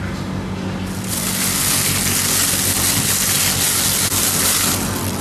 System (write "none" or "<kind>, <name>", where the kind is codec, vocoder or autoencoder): none